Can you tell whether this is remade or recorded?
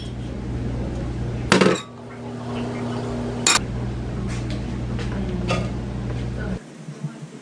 recorded